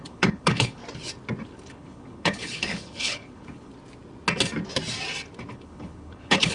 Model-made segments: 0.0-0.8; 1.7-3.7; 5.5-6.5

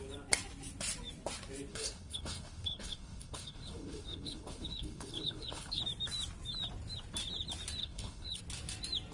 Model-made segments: 1.7-5.8; 7.8-8.4